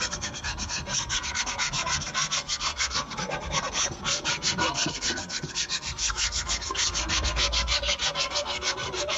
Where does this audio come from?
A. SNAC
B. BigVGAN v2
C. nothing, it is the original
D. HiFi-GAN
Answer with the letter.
A